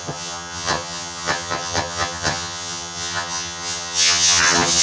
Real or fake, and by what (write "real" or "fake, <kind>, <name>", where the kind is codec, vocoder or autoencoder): fake, vocoder, HiFi-GAN